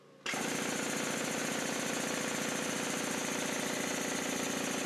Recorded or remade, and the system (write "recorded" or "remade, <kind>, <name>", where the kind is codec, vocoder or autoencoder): recorded